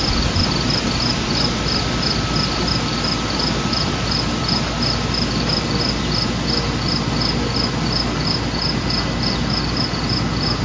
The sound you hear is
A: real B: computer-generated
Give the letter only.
A